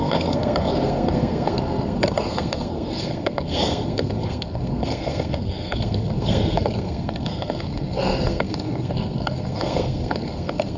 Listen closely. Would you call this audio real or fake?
fake